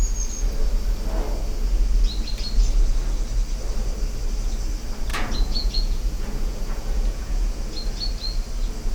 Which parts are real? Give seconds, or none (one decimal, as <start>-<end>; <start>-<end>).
0.0-5.1; 7.6-8.9